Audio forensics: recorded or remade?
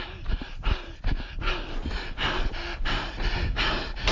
recorded